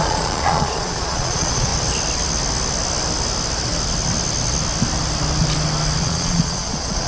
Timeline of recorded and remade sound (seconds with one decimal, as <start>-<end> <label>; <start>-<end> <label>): 0.0-1.7 remade; 1.7-6.0 recorded; 6.0-7.1 remade